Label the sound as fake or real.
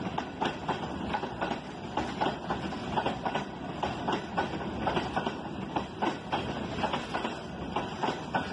real